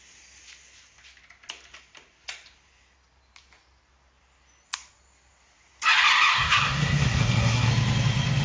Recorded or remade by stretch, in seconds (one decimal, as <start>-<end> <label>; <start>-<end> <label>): 0.0-6.3 recorded; 6.3-7.7 remade; 7.7-8.4 recorded